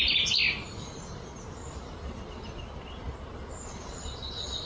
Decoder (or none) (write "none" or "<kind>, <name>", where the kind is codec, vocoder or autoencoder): none